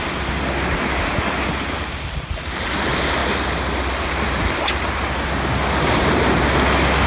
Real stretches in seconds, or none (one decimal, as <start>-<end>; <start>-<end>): 0.0-7.1